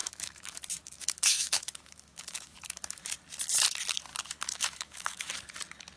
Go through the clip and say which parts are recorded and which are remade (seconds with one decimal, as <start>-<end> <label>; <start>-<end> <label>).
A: 0.0-3.0 remade; 3.0-4.1 recorded; 4.1-5.3 remade; 5.3-6.0 recorded